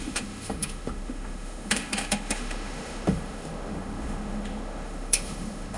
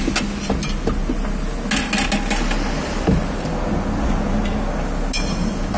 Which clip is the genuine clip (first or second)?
second